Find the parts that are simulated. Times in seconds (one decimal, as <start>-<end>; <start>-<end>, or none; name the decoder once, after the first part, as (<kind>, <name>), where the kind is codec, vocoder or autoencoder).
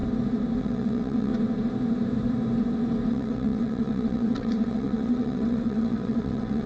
0.6-1.3 (vocoder, WaveNeXt); 3.1-6.7